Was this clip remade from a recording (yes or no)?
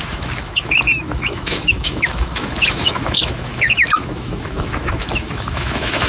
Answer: yes